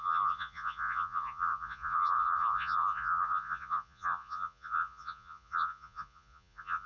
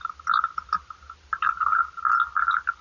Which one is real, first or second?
second